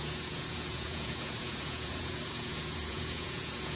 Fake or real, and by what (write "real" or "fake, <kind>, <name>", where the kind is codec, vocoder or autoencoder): fake, vocoder, Vocos